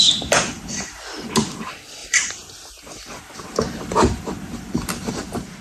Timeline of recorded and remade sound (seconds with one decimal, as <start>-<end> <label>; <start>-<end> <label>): 0.0-2.0 recorded; 2.0-5.1 remade; 5.1-5.6 recorded